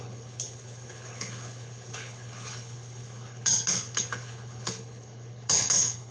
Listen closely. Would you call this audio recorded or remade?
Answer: remade